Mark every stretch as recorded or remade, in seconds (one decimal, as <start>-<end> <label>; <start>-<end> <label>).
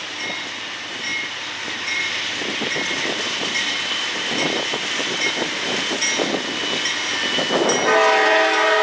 0.0-1.1 recorded; 1.1-5.5 remade; 5.5-8.8 recorded